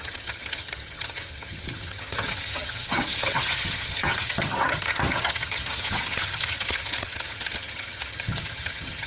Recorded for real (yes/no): no